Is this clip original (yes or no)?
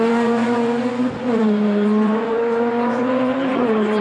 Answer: no